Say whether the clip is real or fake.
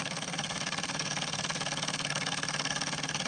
fake